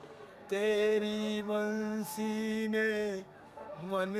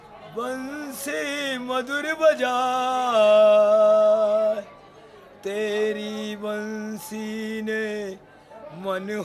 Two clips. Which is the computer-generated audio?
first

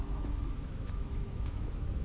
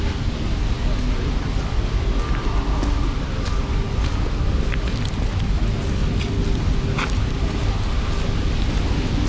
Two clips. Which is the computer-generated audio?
first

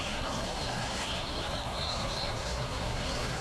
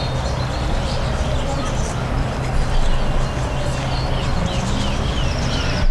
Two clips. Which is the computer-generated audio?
first